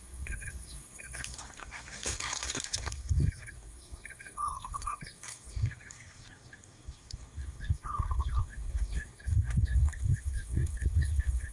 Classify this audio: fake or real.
fake